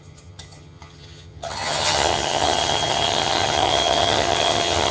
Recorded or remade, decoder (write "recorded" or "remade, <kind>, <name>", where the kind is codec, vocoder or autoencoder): remade, vocoder, HiFi-GAN